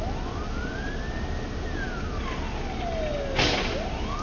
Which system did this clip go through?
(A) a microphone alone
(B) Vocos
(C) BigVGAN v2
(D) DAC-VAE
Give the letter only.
A